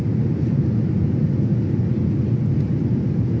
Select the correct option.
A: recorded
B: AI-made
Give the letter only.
A